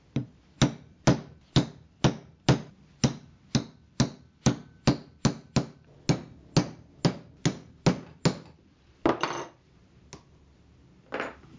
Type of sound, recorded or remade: recorded